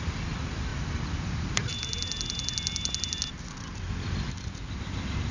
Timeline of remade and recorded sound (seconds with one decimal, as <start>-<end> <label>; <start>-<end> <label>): 0.0-0.7 recorded; 0.7-3.9 remade; 3.9-5.3 recorded